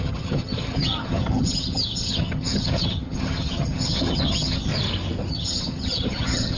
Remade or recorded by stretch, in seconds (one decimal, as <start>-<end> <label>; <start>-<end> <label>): 0.0-4.7 remade; 4.7-5.3 recorded; 5.3-6.6 remade